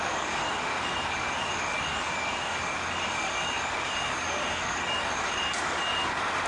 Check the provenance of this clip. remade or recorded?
remade